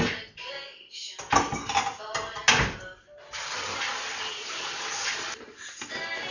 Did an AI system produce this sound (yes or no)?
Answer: no